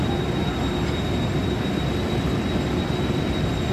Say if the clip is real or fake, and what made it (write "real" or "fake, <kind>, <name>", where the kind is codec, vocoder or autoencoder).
real